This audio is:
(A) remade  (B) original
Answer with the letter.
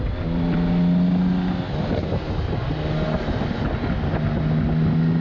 B